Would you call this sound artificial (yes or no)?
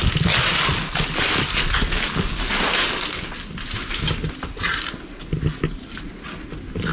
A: no